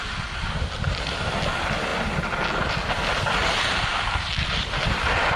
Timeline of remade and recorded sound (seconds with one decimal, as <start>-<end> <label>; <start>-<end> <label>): 0.0-5.4 recorded